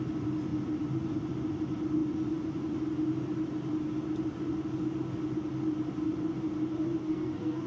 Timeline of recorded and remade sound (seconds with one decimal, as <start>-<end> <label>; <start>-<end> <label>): 0.0-7.0 recorded; 7.0-7.7 remade